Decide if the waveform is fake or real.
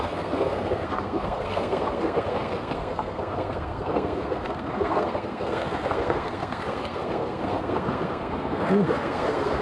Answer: fake